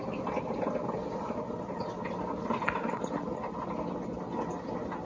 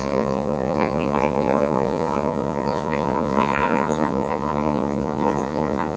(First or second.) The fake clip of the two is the second